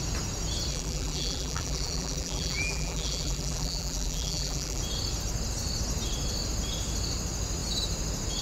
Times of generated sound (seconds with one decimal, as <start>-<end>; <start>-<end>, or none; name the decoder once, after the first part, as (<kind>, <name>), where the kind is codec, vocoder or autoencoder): 0.7-4.8 (vocoder, BigVGAN v2)